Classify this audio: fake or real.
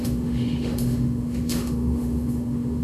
fake